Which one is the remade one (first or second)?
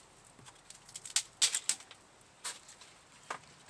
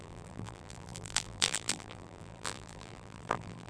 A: second